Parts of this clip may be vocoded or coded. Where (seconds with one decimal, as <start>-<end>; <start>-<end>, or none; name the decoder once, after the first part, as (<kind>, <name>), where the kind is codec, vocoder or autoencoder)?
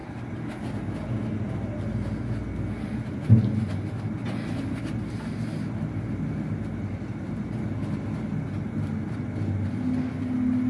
none